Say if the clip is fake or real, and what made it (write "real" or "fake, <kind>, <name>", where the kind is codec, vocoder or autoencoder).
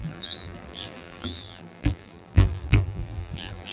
fake, vocoder, BigVGAN v2